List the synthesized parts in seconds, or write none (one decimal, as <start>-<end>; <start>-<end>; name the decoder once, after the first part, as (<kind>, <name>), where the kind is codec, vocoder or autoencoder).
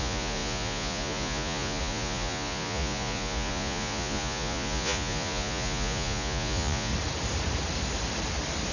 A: 0.0-6.9 (vocoder, Vocos)